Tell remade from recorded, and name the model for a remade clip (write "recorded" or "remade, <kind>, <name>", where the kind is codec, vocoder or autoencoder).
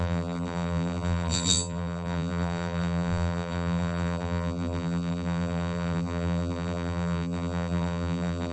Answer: remade, vocoder, BigVGAN v2